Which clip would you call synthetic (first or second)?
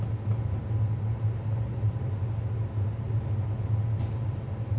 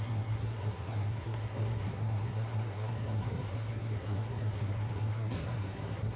second